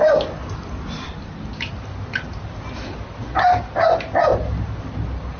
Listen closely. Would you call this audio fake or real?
real